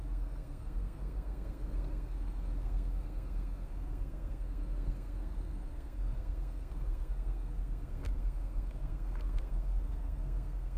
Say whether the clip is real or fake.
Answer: fake